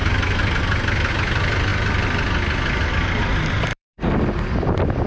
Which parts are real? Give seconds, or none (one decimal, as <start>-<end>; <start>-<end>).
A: 0.0-3.7